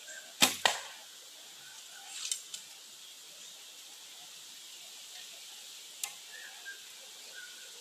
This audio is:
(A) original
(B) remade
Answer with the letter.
A